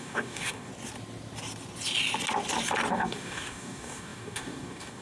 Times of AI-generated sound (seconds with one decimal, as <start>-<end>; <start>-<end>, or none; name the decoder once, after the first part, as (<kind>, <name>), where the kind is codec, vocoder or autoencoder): 0.0-0.7 (codec, DAC); 2.9-5.0